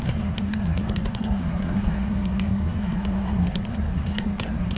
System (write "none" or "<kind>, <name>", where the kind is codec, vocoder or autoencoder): codec, SNAC